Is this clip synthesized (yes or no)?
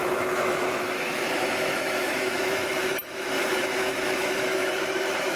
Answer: yes